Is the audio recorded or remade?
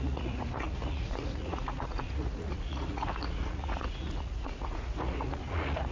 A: remade